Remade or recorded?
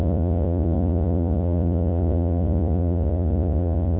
remade